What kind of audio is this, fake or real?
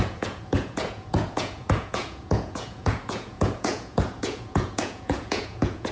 fake